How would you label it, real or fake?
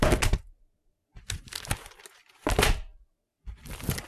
real